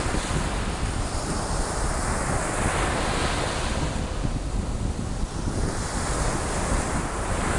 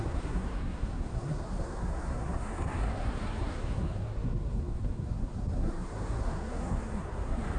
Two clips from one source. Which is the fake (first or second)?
second